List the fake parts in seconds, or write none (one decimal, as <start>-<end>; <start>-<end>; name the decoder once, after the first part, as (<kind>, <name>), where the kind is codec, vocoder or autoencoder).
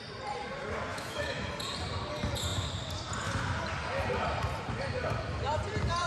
0.9-1.5 (autoencoder, DAC-VAE)